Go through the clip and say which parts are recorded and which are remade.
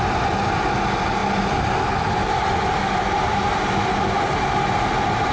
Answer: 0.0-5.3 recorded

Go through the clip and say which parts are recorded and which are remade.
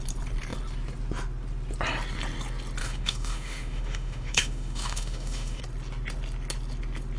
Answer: 0.0-2.8 recorded; 2.8-5.6 remade; 5.6-7.2 recorded